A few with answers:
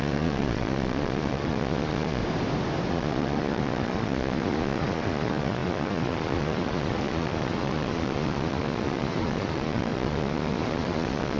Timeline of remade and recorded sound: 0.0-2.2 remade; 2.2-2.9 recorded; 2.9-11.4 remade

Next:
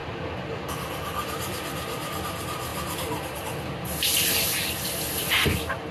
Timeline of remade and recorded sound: 0.0-5.9 recorded

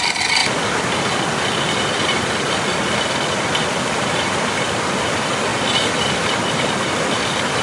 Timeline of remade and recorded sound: 0.0-7.6 recorded

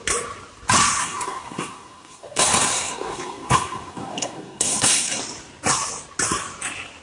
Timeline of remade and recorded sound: 0.0-1.0 recorded; 1.0-5.2 remade; 5.2-7.0 recorded